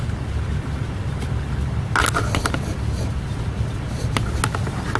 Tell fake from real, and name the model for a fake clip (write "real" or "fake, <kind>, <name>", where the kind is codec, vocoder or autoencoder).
real